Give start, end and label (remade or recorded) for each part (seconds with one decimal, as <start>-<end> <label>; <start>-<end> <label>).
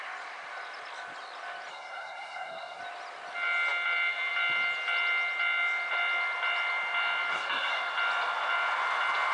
0.0-1.7 recorded; 1.7-2.8 remade; 2.8-7.3 recorded; 7.3-7.8 remade; 7.8-9.3 recorded